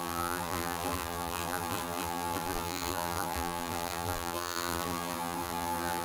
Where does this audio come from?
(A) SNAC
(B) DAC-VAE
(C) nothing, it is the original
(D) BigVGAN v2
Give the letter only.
D